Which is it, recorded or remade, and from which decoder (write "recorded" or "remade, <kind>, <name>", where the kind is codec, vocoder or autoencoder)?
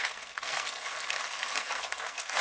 remade, codec, SNAC